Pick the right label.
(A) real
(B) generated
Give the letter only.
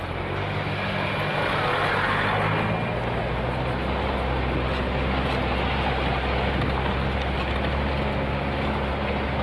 A